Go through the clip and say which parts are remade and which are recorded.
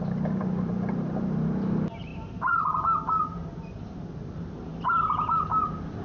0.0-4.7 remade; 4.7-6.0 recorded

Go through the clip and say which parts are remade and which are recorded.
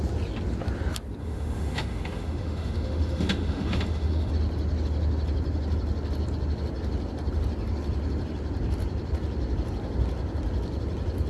0.0-1.2 recorded; 1.2-4.3 remade; 4.3-11.3 recorded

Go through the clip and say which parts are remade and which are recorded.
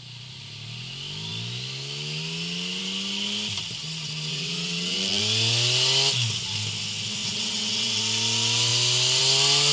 0.0-4.3 recorded; 4.3-5.2 remade; 5.2-7.2 recorded; 7.2-8.0 remade; 8.0-9.7 recorded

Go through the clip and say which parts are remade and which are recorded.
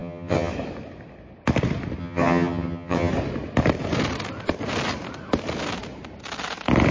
0.0-0.5 remade; 0.5-2.0 recorded; 2.0-3.1 remade; 3.1-6.9 recorded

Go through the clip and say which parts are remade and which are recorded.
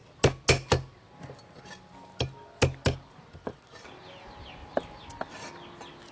0.0-6.1 recorded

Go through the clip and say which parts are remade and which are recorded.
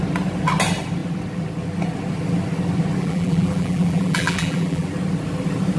0.0-3.0 recorded; 3.0-4.9 remade; 4.9-5.8 recorded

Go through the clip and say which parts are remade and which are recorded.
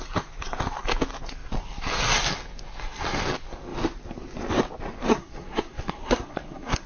0.0-5.1 recorded; 5.1-6.9 remade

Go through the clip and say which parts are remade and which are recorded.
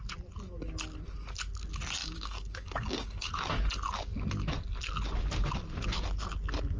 0.0-2.0 recorded; 2.0-3.3 remade; 3.3-6.8 recorded